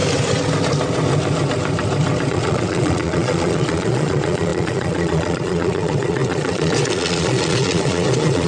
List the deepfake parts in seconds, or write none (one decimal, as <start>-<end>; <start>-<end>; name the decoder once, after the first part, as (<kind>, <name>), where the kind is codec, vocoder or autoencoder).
2.3-8.5 (vocoder, Vocos)